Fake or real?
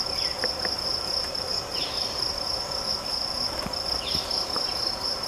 real